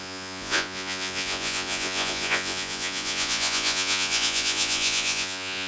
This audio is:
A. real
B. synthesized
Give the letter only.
B